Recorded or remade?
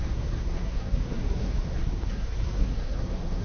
remade